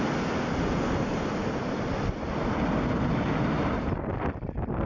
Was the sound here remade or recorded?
recorded